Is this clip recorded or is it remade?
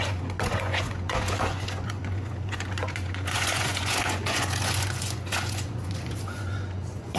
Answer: remade